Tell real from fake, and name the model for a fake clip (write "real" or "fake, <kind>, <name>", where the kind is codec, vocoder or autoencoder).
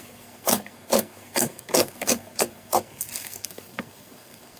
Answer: fake, codec, SNAC